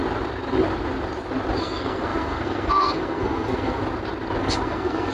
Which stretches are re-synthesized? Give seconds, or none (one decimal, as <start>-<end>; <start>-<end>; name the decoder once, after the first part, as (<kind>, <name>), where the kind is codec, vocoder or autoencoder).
1.6-3.8 (codec, SNAC); 4.4-5.1